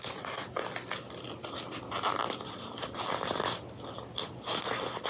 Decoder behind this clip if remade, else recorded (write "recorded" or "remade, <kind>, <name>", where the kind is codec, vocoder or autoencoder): recorded